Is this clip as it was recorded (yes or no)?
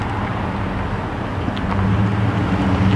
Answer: yes